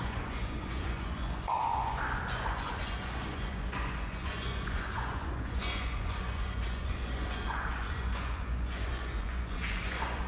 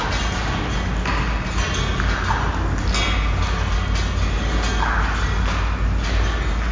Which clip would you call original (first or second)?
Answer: second